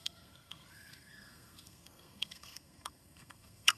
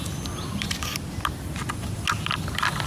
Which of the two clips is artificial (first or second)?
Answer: first